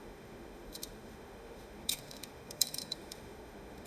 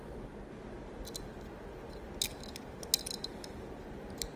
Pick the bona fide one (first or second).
second